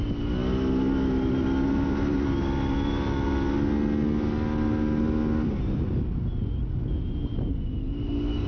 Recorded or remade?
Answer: recorded